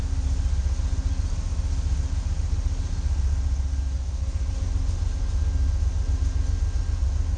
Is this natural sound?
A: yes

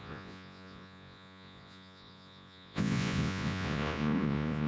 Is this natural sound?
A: no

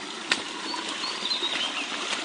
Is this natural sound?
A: yes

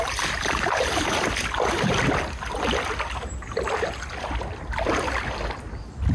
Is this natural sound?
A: yes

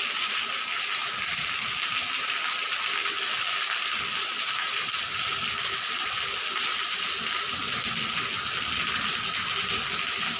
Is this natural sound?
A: yes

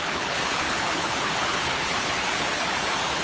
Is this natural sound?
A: no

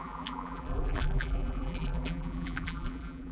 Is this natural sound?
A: no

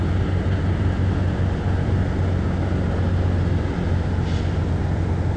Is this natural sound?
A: yes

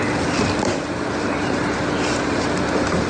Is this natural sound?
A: yes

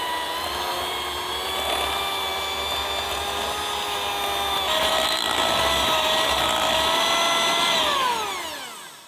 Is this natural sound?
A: yes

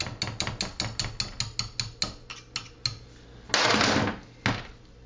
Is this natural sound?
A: yes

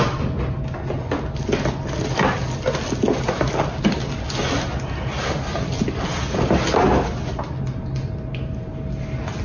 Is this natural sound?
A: yes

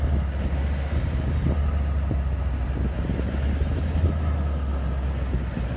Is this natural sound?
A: yes